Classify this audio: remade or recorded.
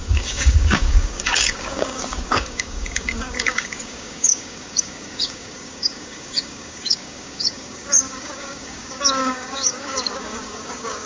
remade